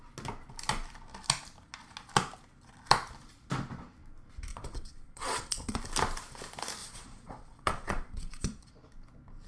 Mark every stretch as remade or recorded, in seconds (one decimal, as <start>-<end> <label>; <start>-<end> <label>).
0.0-4.5 recorded; 4.5-5.8 remade; 5.8-6.8 recorded; 6.8-8.7 remade; 8.7-9.5 recorded